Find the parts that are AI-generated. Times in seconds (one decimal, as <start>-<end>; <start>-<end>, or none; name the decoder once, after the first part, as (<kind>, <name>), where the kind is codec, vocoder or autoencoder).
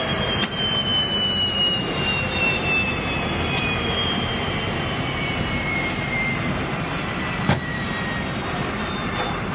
0.0-0.9 (vocoder, BigVGAN v2); 1.5-9.5